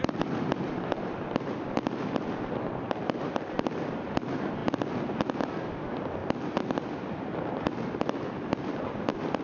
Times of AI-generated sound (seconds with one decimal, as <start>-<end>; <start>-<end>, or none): 0.0-4.6; 5.7-6.2; 8.8-9.4